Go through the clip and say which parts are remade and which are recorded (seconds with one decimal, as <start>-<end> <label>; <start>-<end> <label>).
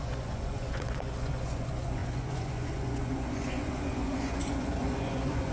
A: 0.0-5.5 remade